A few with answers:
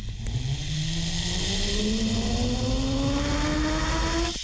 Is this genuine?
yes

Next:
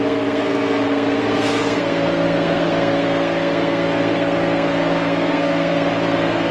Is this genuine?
no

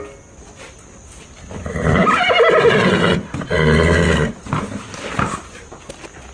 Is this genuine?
yes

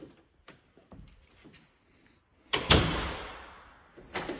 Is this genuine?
yes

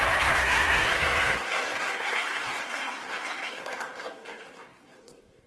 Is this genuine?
no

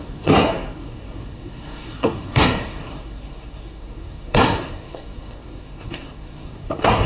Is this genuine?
no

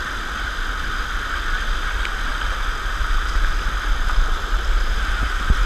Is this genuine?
yes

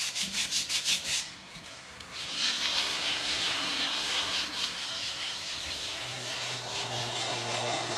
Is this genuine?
no